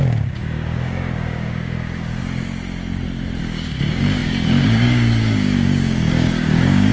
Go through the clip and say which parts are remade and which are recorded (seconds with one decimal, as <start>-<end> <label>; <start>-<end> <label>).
0.0-2.2 remade; 2.2-3.4 recorded; 3.4-6.9 remade